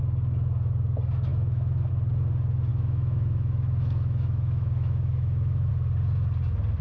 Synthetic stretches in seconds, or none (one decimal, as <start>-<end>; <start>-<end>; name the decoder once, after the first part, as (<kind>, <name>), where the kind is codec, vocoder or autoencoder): 1.3-1.9 (autoencoder, DAC-VAE); 2.7-5.7